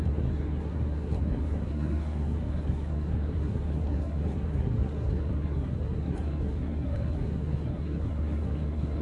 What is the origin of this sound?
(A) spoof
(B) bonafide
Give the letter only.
A